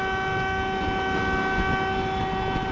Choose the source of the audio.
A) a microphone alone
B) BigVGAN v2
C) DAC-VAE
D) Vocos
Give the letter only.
A